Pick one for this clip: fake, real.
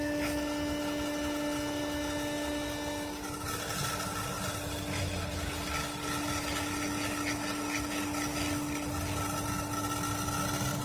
real